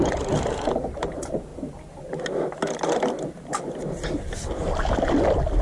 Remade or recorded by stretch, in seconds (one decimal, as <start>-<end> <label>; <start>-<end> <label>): 0.0-5.6 recorded